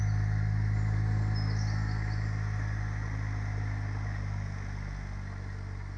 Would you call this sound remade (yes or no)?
no